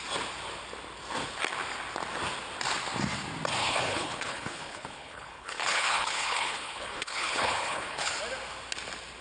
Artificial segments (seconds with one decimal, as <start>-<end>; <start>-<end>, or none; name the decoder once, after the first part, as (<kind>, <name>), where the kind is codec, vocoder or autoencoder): 3.6-8.2 (codec, HILCodec)